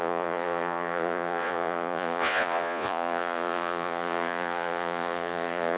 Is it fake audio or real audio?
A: fake